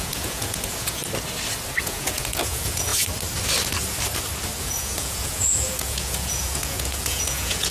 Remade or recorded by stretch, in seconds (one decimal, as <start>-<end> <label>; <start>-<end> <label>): 0.0-1.0 remade; 1.0-1.8 recorded; 1.8-2.9 remade; 2.9-4.6 recorded; 4.6-7.7 remade